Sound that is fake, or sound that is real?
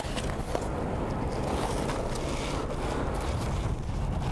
real